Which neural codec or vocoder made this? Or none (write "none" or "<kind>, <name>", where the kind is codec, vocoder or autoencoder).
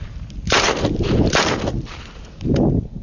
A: none